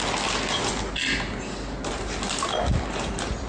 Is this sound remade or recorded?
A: recorded